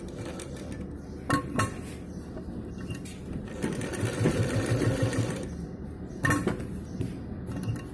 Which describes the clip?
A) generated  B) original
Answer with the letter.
A